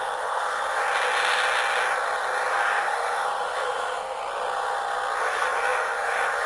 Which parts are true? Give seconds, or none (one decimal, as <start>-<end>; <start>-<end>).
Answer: 0.8-2.5; 4.2-5.2